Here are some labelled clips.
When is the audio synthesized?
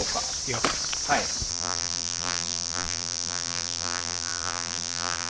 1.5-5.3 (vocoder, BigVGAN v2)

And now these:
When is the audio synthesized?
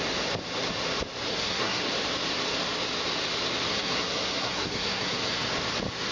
1.3-1.8 (codec, SNAC); 3.7-5.5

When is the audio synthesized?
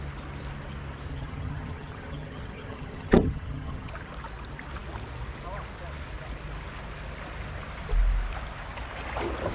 1.1-3.9 (vocoder, HiFi-GAN)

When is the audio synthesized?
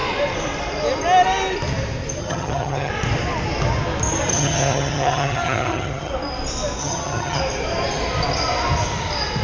2.2-2.9 (vocoder, HiFi-GAN); 4.3-6.1; 6.8-7.4